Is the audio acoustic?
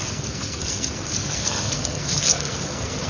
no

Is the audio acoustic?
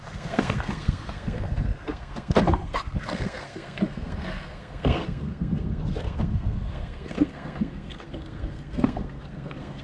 no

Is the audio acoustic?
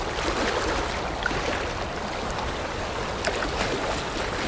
yes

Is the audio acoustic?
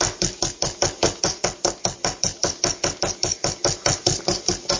yes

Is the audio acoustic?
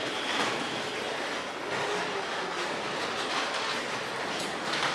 yes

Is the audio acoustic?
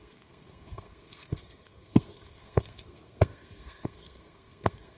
no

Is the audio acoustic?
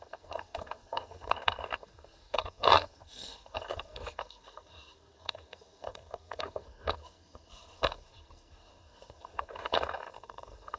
no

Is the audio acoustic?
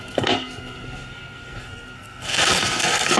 no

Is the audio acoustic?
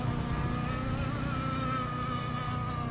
yes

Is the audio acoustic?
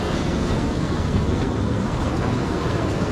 no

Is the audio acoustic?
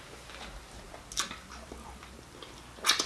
yes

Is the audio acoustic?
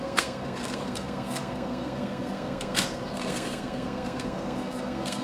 no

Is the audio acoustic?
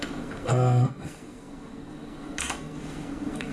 no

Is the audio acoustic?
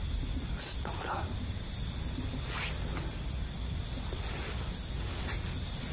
yes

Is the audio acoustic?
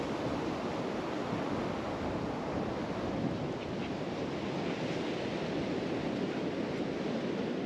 yes